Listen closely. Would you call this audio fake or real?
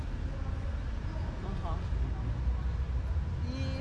real